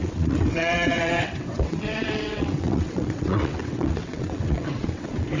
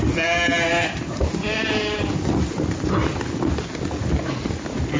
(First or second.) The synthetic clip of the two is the first